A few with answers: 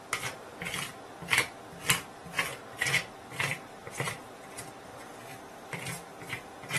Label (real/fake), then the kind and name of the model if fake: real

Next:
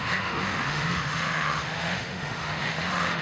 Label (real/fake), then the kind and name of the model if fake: fake, autoencoder, DAC-VAE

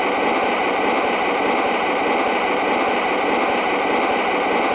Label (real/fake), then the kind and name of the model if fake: fake, vocoder, BigVGAN v2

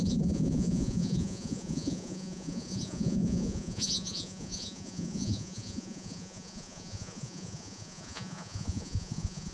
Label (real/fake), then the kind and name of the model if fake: fake, vocoder, Vocos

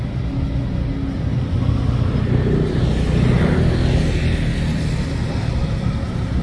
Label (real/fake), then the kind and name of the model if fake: real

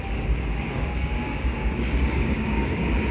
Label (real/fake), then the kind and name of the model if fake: fake, codec, DAC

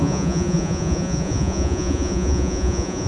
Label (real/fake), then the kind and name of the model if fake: fake, vocoder, Vocos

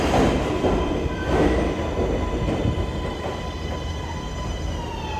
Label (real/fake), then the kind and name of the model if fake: real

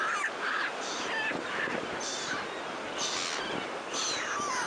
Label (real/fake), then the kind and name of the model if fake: real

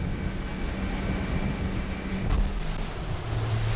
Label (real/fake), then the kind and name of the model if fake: real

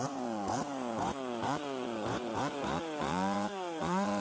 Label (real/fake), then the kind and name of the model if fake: fake, vocoder, Vocos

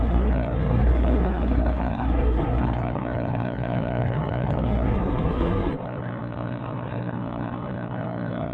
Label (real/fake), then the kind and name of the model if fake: fake, codec, SNAC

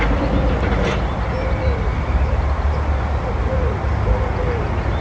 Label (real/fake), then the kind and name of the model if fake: real